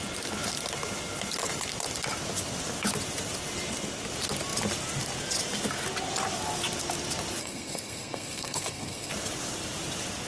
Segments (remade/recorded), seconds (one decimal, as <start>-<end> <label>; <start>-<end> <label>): 0.0-7.4 recorded; 7.4-9.1 remade; 9.1-10.3 recorded